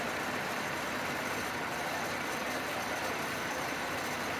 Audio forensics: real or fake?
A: fake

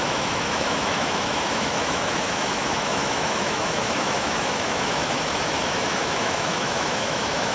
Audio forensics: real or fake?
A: fake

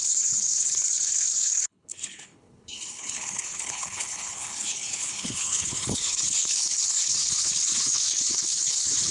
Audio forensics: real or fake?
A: fake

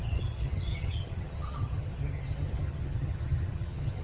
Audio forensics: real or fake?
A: fake